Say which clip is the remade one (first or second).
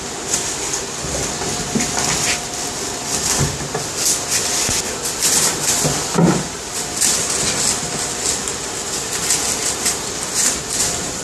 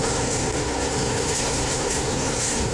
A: second